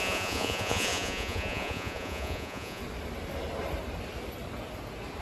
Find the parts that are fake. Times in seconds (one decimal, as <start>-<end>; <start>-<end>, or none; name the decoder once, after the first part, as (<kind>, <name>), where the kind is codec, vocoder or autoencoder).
0.0-2.8 (vocoder, Vocos)